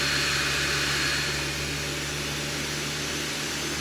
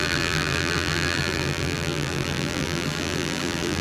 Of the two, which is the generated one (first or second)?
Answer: second